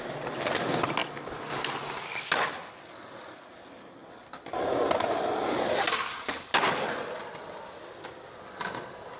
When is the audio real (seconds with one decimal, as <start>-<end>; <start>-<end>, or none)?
0.0-9.2